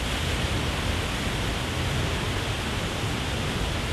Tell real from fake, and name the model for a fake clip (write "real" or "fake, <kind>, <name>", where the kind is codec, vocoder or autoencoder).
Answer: real